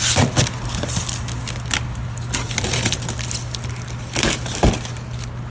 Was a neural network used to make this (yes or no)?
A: no